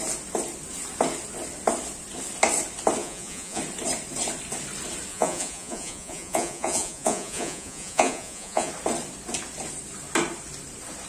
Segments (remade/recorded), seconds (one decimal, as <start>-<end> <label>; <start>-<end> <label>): 0.0-3.0 recorded; 3.0-3.6 remade; 3.6-5.1 recorded; 5.1-8.7 remade; 8.7-11.1 recorded